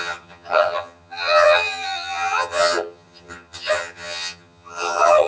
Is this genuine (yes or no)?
no